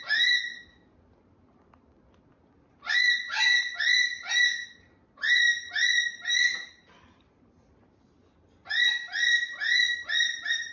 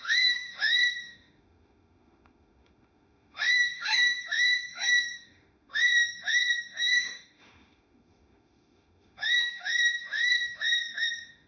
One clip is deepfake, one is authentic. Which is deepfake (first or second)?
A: second